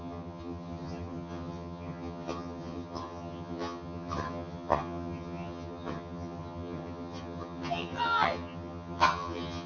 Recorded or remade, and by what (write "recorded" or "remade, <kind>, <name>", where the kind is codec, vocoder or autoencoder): remade, vocoder, HiFi-GAN